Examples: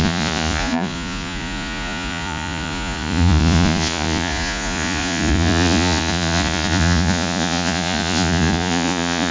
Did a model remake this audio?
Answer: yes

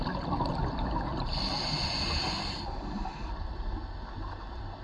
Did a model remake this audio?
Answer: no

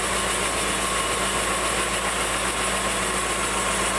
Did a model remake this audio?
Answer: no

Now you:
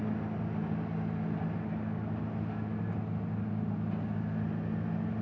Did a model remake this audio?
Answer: no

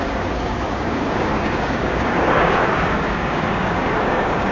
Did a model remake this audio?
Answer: yes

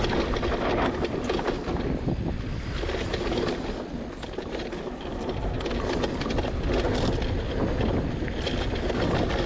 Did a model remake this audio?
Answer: no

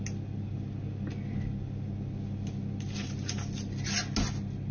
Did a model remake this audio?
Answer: no